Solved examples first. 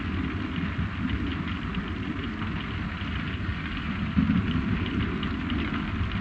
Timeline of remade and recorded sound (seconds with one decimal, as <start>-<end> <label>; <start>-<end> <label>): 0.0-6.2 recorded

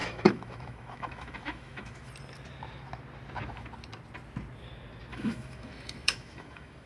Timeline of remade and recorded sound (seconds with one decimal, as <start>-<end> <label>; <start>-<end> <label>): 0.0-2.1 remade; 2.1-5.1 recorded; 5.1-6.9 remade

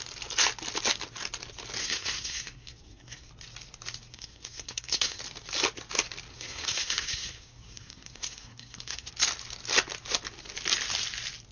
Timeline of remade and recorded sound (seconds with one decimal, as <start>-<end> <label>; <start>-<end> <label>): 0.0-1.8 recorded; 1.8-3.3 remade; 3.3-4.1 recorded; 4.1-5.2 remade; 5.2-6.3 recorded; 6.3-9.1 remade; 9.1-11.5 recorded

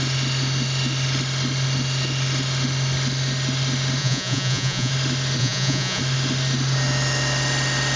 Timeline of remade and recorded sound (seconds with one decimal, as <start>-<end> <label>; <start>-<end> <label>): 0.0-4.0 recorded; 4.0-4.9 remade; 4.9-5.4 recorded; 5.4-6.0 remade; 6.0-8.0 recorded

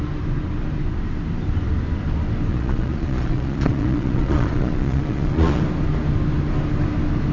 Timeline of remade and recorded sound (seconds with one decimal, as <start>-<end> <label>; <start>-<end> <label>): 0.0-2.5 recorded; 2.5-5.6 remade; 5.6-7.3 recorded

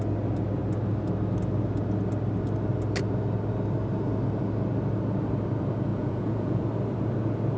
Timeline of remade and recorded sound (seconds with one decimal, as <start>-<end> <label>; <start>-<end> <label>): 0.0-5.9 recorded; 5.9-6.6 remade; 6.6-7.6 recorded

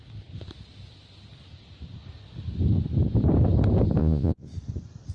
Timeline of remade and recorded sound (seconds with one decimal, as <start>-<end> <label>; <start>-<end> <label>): 0.0-4.0 recorded; 4.0-4.5 remade; 4.5-5.1 recorded